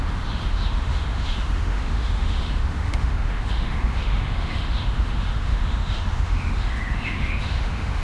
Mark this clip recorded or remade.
remade